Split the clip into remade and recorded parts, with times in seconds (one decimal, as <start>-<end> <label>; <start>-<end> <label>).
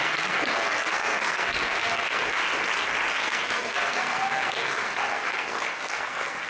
0.0-2.4 remade; 2.4-3.1 recorded; 3.1-6.5 remade